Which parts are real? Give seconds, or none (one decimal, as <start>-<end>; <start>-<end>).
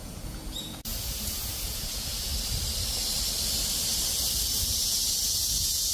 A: 2.3-4.8